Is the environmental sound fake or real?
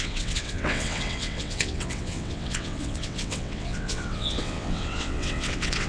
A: fake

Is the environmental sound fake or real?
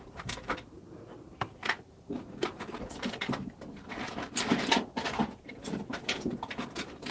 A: real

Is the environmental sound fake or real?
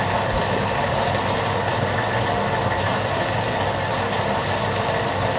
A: real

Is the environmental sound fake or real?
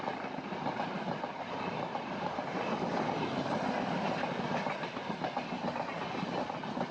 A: real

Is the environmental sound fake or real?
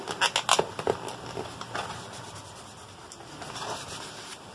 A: real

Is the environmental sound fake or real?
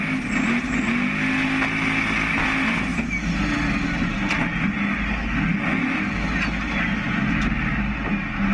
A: real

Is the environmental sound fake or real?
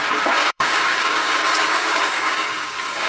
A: fake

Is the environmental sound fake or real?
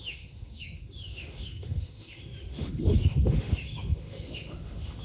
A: fake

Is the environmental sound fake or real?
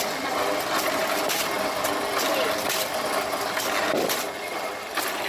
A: real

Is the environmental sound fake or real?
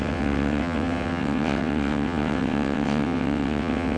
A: fake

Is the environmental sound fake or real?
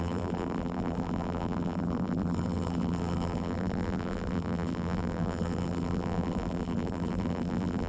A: fake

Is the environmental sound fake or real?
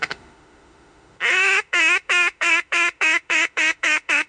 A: fake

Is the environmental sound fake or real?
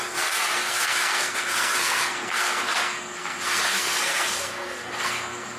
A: fake